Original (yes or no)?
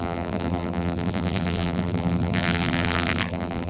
no